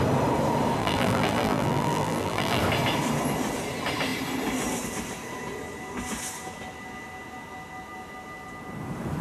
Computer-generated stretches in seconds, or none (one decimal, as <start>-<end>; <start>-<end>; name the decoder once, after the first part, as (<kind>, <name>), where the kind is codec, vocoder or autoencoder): 0.8-2.6 (vocoder, BigVGAN v2)